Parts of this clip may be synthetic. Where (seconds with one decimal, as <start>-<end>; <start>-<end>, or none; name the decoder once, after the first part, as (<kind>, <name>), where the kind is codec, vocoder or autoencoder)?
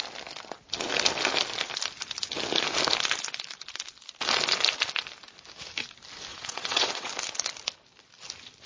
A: 6.3-7.1 (vocoder, WaveNeXt)